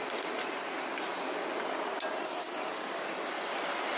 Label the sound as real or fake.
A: real